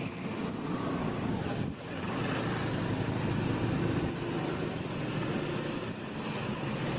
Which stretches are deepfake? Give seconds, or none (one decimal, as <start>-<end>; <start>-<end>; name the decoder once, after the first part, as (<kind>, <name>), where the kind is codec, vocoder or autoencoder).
1.0-2.2 (codec, DAC)